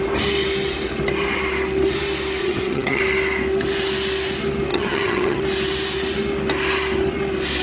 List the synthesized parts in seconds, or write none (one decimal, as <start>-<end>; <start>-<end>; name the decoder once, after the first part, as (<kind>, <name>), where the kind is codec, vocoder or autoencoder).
2.4-3.0 (vocoder, HiFi-GAN); 4.7-5.4